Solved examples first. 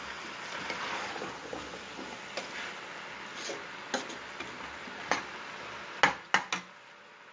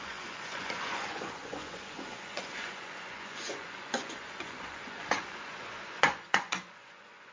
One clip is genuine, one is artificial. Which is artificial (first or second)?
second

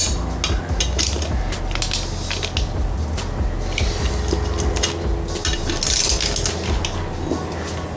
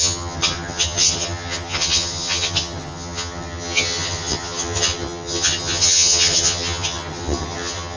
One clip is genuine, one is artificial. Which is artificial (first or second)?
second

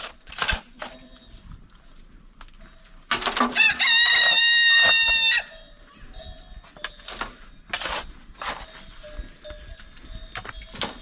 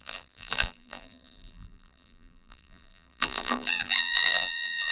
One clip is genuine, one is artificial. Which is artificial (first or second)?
second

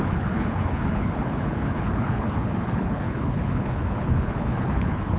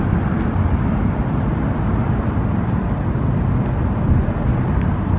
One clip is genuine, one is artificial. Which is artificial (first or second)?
first